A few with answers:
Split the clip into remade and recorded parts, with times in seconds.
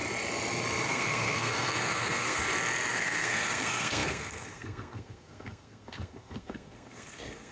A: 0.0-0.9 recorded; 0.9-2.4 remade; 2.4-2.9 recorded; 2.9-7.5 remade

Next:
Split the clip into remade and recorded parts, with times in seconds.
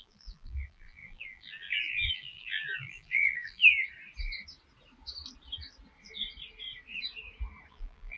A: 0.0-3.6 remade; 3.6-7.7 recorded; 7.7-8.2 remade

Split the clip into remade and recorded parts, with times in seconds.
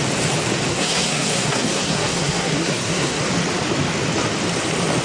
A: 0.0-0.7 recorded; 0.7-3.2 remade; 3.2-5.0 recorded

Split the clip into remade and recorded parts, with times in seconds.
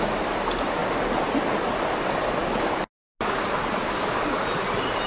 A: 0.0-5.1 recorded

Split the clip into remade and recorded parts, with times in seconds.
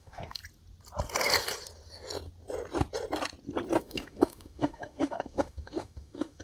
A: 0.0-0.4 remade; 0.4-3.8 recorded; 3.8-6.4 remade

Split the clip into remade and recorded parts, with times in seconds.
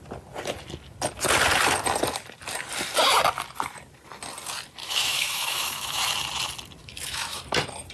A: 0.0-4.8 recorded; 4.8-6.0 remade; 6.0-6.8 recorded; 6.8-7.4 remade; 7.4-7.9 recorded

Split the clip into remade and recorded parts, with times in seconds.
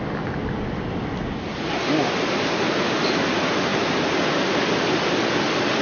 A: 0.0-5.8 recorded